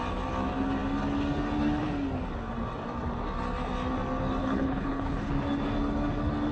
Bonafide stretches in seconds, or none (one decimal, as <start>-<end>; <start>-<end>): 0.0-4.4; 5.3-6.5